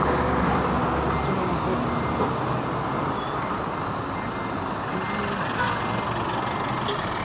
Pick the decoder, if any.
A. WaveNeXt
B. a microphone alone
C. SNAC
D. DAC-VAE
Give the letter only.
B